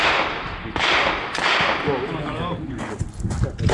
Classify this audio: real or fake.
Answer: real